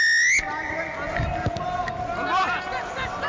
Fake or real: real